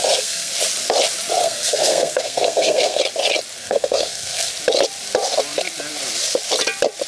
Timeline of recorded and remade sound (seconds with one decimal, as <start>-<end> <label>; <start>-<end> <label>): 0.0-0.5 remade; 0.5-1.4 recorded; 1.4-3.0 remade; 3.0-3.6 recorded; 3.6-4.5 remade; 4.5-7.1 recorded